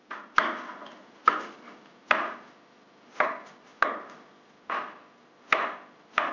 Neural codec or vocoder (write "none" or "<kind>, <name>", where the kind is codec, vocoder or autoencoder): none